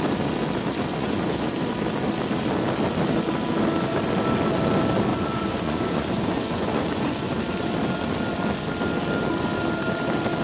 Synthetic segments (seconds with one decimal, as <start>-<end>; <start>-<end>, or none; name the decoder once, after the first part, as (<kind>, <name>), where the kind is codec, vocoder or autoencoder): 0.9-1.5 (vocoder, Vocos); 5.1-7.3